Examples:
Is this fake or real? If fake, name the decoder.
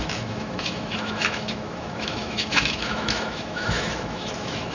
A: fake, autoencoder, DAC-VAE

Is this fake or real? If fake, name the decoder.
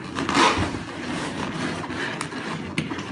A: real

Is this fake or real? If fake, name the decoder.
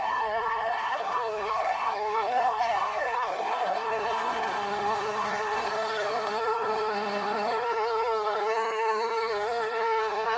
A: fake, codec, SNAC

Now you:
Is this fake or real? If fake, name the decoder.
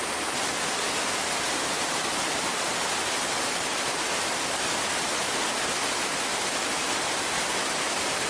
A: real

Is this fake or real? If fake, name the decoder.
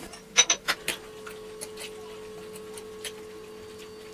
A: real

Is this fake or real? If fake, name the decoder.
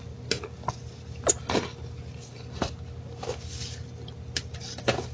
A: real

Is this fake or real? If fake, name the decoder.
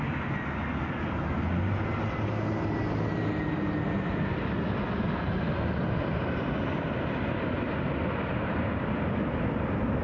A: real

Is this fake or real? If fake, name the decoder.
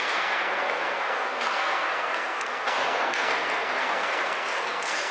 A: fake, codec, SNAC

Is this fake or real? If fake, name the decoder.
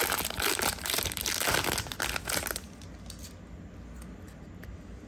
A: real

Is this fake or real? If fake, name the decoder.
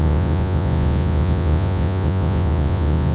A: fake, vocoder, Vocos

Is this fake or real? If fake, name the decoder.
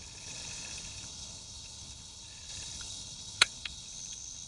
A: fake, codec, HILCodec